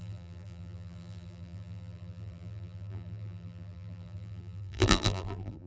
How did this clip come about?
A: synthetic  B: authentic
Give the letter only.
A